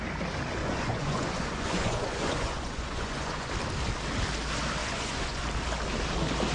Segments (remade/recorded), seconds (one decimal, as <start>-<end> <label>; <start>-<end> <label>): 0.0-0.6 recorded; 0.6-3.5 remade; 3.5-4.8 recorded; 4.8-5.4 remade; 5.4-6.5 recorded